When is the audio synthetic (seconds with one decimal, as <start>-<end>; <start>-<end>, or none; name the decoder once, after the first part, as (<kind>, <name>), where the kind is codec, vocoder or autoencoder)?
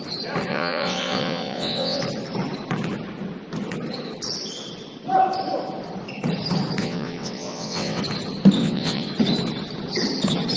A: 0.5-2.0 (vocoder, WaveNeXt); 6.8-8.0; 8.6-9.1